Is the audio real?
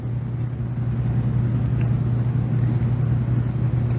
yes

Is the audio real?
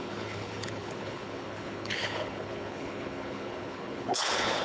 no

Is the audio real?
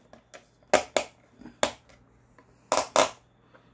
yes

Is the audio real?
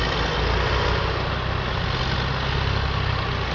yes